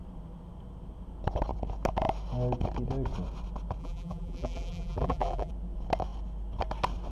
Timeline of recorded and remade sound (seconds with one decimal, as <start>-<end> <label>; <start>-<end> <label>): 0.0-3.8 recorded; 3.8-5.5 remade; 5.5-7.1 recorded